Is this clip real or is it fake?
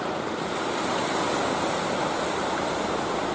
real